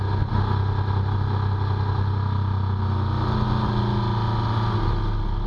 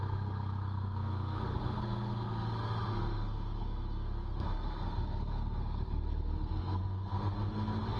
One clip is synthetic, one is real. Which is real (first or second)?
first